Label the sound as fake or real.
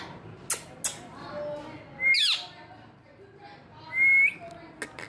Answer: real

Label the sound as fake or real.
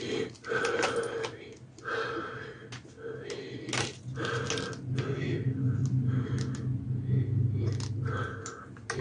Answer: real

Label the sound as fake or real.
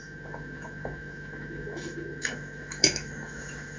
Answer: fake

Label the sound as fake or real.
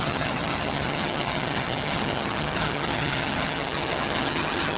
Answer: fake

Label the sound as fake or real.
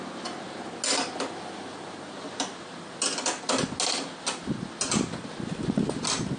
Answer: real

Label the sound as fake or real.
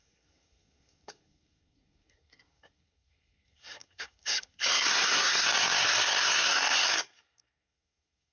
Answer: fake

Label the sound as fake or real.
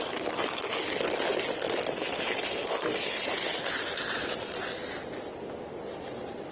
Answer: real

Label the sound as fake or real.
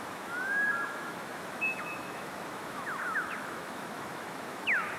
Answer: fake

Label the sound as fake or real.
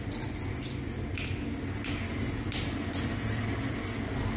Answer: real